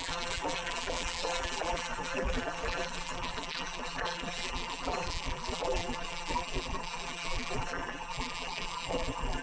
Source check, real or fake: fake